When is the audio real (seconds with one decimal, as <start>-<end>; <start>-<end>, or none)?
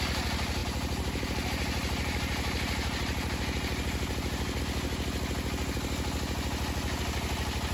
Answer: 0.0-0.6; 4.6-7.7